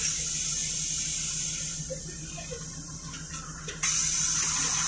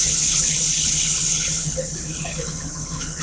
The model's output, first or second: second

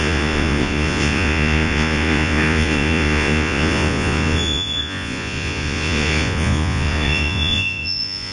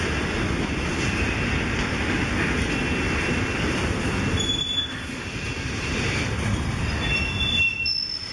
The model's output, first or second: first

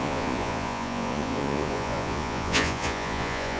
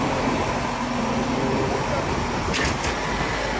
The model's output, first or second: first